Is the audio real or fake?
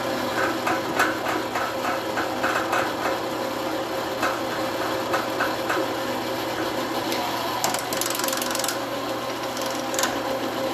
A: real